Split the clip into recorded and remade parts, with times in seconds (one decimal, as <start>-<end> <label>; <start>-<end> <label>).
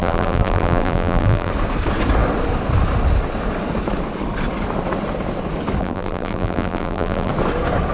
0.0-1.5 remade; 1.5-5.8 recorded; 5.8-7.3 remade; 7.3-7.9 recorded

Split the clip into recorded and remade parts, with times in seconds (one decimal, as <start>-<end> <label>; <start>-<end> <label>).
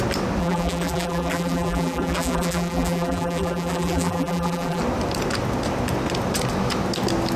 0.0-0.4 recorded; 0.4-4.8 remade; 4.8-7.4 recorded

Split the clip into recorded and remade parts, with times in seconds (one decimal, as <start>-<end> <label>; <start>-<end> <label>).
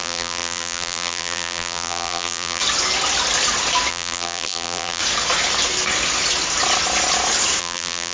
0.0-2.6 remade; 2.6-3.9 recorded; 3.9-5.0 remade; 5.0-7.6 recorded; 7.6-8.1 remade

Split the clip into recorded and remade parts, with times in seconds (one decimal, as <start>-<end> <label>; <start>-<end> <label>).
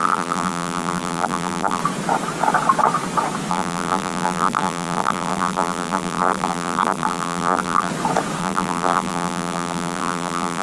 0.0-1.8 remade; 1.8-3.5 recorded; 3.5-7.9 remade; 7.9-8.4 recorded; 8.4-10.6 remade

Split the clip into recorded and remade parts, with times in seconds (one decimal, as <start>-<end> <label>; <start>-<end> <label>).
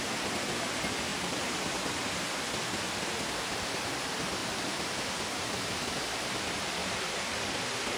0.0-1.1 recorded; 1.1-2.4 remade; 2.4-4.4 recorded; 4.4-5.1 remade; 5.1-6.8 recorded; 6.8-7.4 remade; 7.4-8.0 recorded